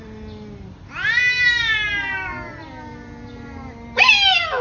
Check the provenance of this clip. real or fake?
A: real